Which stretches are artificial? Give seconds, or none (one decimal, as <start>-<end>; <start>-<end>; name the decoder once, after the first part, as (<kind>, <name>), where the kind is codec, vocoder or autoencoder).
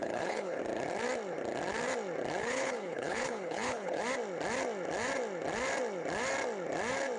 0.0-0.6 (codec, HILCodec); 2.4-4.0